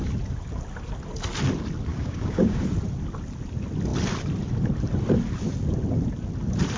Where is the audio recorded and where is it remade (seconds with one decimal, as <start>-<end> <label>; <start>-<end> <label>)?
0.0-1.9 recorded; 1.9-2.6 remade; 2.6-6.8 recorded